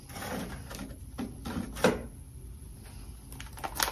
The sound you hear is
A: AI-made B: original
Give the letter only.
B